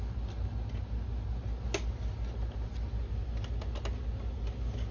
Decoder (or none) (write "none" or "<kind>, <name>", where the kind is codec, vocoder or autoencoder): none